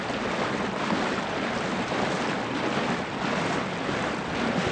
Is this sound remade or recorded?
recorded